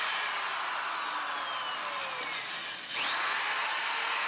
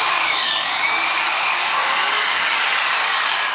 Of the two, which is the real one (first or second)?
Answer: first